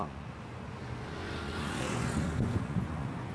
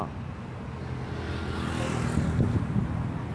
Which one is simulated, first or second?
first